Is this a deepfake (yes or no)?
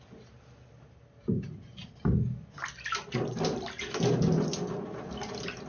no